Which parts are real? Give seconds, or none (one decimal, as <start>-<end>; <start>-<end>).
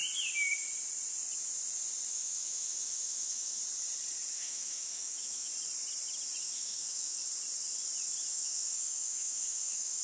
0.0-2.1; 3.6-4.3; 5.5-6.4; 7.2-8.3